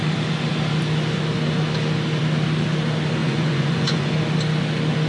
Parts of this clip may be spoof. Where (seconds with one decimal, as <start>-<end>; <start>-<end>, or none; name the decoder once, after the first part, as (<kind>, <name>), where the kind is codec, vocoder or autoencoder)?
3.2-4.1 (vocoder, Vocos)